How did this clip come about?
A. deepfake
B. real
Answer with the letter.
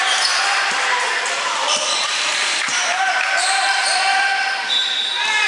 A